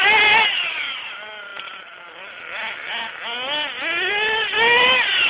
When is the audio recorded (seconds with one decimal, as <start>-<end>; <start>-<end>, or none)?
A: 0.0-5.3